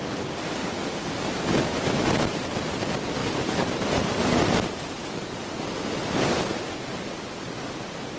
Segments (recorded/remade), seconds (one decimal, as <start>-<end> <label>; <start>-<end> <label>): 0.0-0.6 recorded; 0.6-1.2 remade; 1.2-1.7 recorded; 1.7-2.5 remade; 2.5-3.2 recorded; 3.2-5.1 remade; 5.1-8.2 recorded

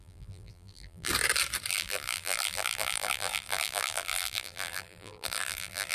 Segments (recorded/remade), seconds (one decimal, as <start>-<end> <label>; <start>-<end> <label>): 0.0-1.1 remade; 1.1-1.7 recorded; 1.7-5.9 remade

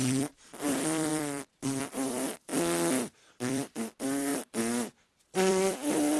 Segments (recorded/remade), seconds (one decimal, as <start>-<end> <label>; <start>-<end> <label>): 0.0-2.5 remade; 2.5-3.4 recorded; 3.4-4.3 remade; 4.3-5.2 recorded; 5.2-6.2 remade

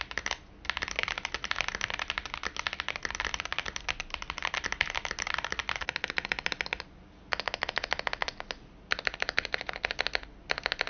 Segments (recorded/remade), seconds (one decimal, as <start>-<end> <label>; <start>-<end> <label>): 0.0-10.9 recorded

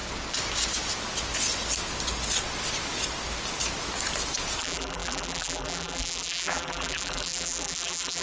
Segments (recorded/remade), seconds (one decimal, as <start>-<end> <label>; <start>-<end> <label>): 0.0-4.6 recorded; 4.6-8.2 remade